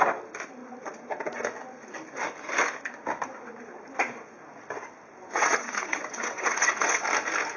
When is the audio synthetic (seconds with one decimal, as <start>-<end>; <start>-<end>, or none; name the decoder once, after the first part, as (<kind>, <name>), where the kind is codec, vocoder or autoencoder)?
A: 5.3-7.0 (vocoder, WaveNeXt)